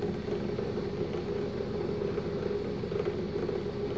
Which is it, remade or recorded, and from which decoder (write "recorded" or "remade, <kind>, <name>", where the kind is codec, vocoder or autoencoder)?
recorded